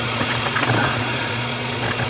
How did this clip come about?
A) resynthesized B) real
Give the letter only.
A